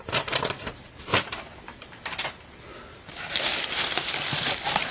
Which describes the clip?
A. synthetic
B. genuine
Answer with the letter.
A